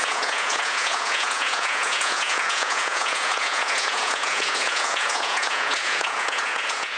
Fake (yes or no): yes